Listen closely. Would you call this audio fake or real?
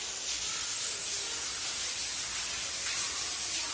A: real